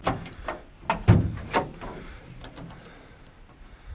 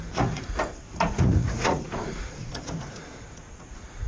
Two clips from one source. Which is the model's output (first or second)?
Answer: second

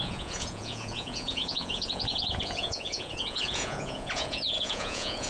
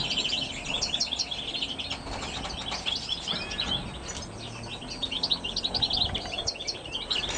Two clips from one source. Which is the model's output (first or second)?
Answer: first